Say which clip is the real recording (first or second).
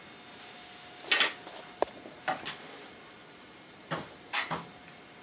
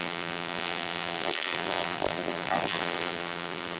first